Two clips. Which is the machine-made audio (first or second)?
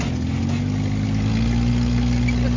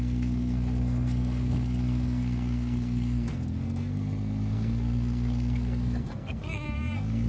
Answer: second